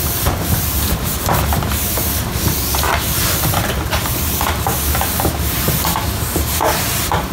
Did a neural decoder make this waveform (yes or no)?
no